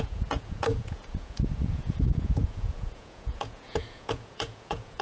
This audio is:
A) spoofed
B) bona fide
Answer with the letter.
A